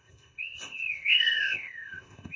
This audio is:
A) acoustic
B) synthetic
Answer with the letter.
B